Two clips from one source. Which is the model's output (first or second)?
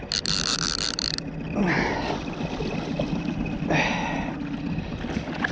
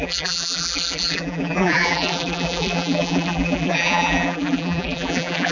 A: second